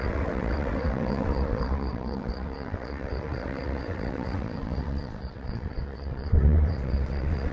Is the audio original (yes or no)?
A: no